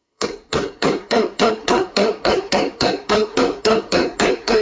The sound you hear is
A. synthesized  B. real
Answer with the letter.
A